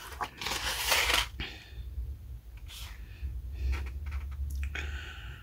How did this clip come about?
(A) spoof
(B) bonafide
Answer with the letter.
B